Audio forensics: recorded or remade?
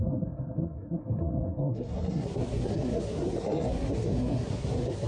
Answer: remade